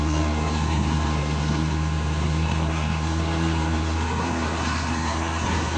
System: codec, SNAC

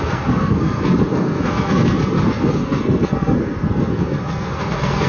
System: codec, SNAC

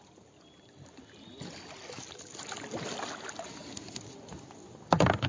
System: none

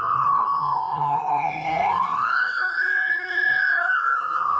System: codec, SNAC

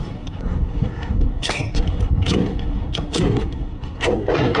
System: codec, SNAC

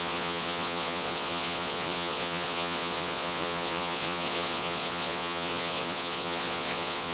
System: vocoder, Vocos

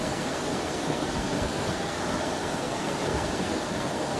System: codec, SNAC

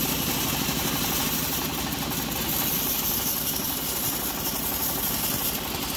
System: none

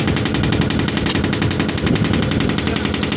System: none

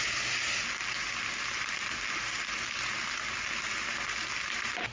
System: none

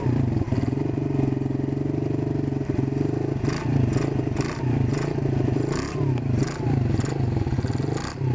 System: none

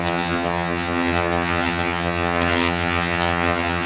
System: vocoder, HiFi-GAN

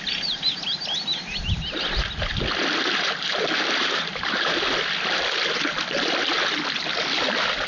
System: none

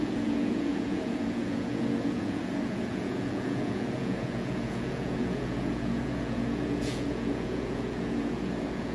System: vocoder, Vocos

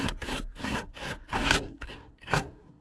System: codec, SNAC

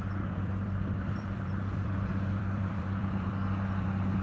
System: vocoder, BigVGAN v2